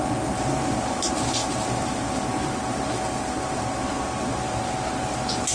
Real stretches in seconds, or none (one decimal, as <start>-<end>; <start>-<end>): 0.0-5.5